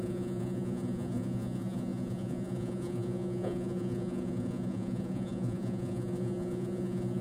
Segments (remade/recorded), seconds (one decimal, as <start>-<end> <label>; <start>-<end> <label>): 0.0-7.2 remade